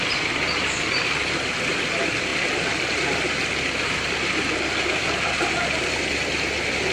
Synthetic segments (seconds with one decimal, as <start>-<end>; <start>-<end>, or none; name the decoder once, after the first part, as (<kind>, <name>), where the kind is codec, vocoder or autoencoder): none